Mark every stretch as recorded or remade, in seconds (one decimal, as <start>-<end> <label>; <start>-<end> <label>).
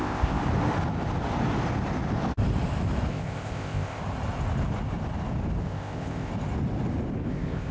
0.0-0.4 remade; 0.4-3.1 recorded; 3.1-4.0 remade; 4.0-5.6 recorded; 5.6-6.3 remade; 6.3-7.3 recorded; 7.3-7.7 remade